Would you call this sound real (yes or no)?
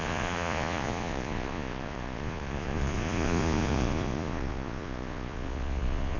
no